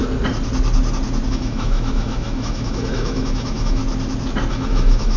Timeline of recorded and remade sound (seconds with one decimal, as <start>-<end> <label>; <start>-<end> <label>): 0.0-1.3 recorded; 1.3-3.8 remade; 3.8-4.5 recorded; 4.5-5.2 remade

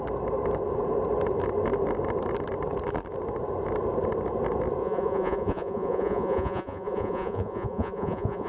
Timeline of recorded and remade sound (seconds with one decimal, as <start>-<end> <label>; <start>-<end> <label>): 0.0-4.8 recorded; 4.8-8.5 remade

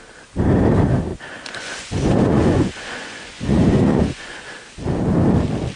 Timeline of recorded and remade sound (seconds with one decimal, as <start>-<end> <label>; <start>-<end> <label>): 0.0-1.1 recorded; 1.1-4.6 remade; 4.6-5.8 recorded

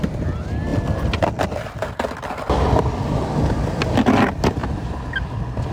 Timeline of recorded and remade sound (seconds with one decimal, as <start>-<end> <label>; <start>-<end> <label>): 0.0-0.7 recorded; 0.7-3.9 remade; 3.9-4.6 recorded; 4.6-5.3 remade; 5.3-5.7 recorded

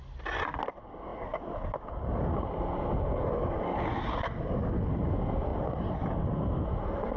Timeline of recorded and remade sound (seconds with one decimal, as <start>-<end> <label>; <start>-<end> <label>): 0.0-7.2 recorded